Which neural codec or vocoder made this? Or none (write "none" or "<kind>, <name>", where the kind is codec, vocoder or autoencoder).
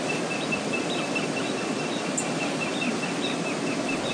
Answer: none